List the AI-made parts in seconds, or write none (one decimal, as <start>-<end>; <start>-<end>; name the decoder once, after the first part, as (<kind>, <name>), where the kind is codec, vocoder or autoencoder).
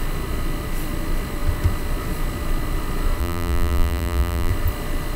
3.2-4.5 (vocoder, BigVGAN v2)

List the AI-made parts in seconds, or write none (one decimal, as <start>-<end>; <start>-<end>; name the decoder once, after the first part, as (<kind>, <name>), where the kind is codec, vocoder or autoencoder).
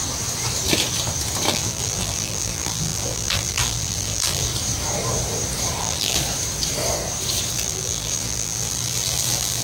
1.5-4.5 (vocoder, BigVGAN v2); 5.8-6.2; 7.5-9.6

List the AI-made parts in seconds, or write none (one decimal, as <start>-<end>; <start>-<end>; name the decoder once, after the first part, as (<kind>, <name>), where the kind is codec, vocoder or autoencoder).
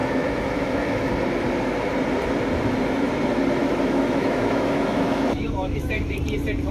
0.0-1.1 (autoencoder, DAC-VAE); 3.6-6.2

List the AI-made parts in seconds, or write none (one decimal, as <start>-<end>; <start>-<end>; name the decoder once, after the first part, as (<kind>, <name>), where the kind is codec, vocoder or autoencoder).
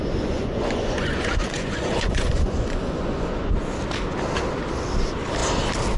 0.0-3.6 (vocoder, Vocos)